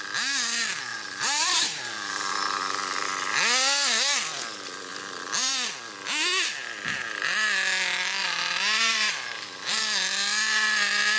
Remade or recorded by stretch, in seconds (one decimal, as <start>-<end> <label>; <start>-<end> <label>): 0.0-0.9 recorded; 0.9-2.3 remade; 2.3-4.9 recorded; 4.9-5.5 remade; 5.5-8.2 recorded; 8.2-9.8 remade; 9.8-11.2 recorded